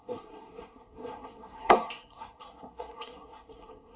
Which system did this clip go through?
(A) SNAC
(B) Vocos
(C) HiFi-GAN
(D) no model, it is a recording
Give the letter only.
A